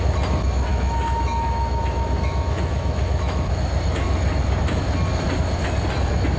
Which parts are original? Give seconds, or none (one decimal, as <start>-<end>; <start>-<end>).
0.0-0.7; 3.6-6.4